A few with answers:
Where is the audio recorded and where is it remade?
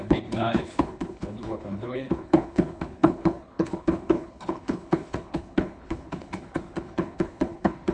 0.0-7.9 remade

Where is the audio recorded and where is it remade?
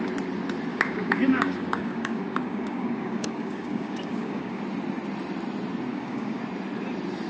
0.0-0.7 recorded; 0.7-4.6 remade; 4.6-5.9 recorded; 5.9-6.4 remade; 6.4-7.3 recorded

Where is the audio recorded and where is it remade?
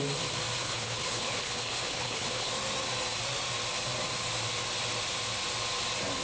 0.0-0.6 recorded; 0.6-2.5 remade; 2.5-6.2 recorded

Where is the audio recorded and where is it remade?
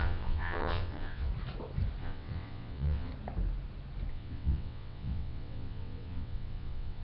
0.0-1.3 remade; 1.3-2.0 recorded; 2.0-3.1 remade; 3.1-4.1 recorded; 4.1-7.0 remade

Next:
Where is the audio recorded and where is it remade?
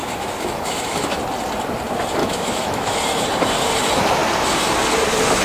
0.0-1.2 remade; 1.2-2.2 recorded; 2.2-3.0 remade; 3.0-5.4 recorded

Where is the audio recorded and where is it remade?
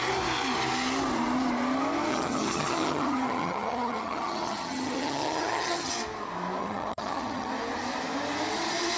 0.0-2.1 recorded; 2.1-5.9 remade; 5.9-6.6 recorded; 6.6-7.5 remade; 7.5-9.0 recorded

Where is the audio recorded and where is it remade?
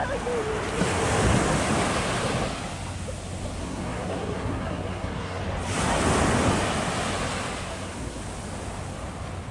0.0-3.6 recorded; 3.6-5.4 remade; 5.4-7.7 recorded; 7.7-8.2 remade; 8.2-9.5 recorded